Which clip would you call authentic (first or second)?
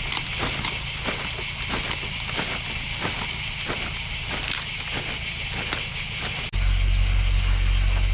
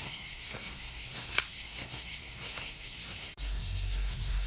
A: first